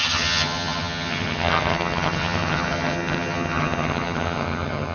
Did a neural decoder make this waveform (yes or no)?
yes